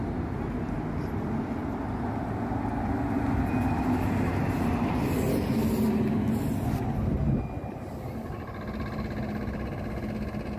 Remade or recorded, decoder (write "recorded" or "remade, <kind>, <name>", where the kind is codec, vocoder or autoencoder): recorded